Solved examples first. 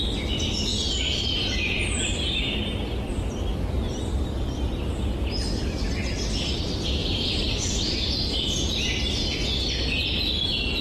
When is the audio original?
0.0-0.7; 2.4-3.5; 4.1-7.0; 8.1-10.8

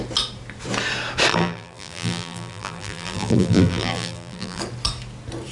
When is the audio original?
0.0-1.3; 4.6-5.5

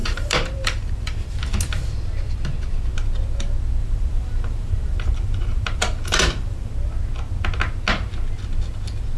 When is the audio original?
1.6-3.8; 6.7-9.2